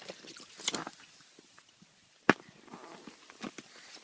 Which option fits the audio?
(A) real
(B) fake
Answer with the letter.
A